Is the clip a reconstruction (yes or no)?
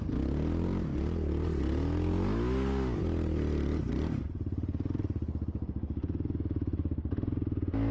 no